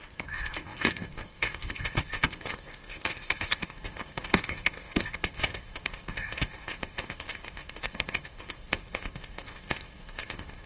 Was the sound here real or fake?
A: fake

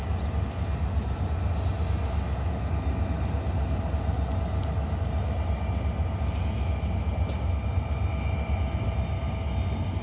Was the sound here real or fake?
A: real